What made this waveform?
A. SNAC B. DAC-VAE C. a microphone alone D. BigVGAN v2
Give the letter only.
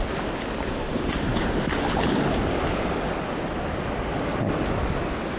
C